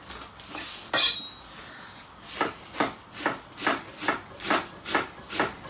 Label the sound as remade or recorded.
recorded